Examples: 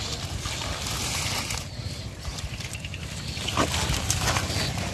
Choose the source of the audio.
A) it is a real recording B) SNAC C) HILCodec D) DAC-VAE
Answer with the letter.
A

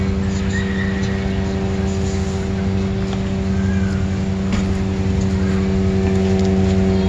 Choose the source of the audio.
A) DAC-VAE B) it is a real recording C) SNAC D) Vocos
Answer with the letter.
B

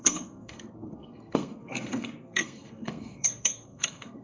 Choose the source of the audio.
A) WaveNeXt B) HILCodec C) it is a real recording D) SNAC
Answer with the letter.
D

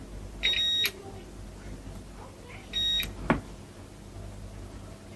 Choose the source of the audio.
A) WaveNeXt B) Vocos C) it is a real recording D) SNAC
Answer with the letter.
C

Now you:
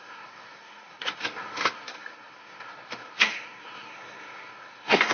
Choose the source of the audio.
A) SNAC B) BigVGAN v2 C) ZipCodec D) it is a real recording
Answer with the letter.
A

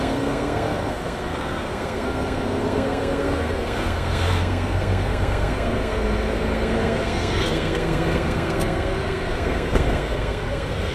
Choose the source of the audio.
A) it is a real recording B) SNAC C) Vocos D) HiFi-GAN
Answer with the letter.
B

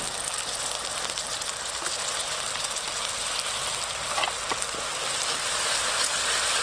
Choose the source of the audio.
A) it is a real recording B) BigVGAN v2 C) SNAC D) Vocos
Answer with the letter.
A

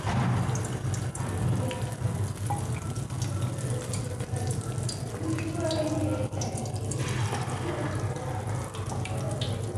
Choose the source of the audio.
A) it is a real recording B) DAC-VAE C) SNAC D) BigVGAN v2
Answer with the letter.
A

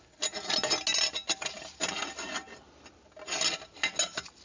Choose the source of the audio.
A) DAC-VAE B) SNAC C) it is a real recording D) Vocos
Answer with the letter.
C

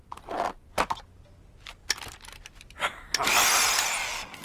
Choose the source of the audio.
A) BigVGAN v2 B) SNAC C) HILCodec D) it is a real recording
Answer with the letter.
D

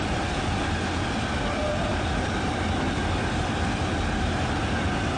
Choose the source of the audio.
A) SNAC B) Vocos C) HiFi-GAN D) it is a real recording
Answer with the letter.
D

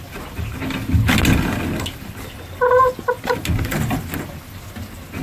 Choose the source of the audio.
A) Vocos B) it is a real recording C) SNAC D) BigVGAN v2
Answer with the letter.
B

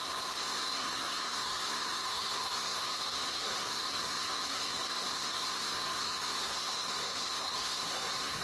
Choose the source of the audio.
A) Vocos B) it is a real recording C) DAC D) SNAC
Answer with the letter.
D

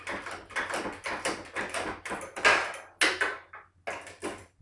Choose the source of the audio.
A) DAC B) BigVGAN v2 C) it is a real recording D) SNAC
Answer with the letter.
C